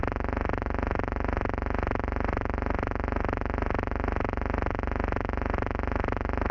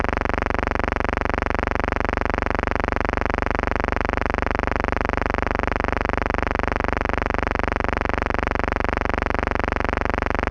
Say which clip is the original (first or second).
second